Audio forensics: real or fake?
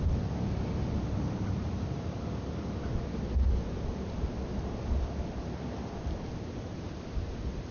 real